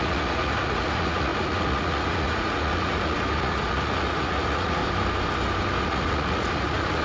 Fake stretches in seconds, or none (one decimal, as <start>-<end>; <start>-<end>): 0.0-4.8; 5.8-7.0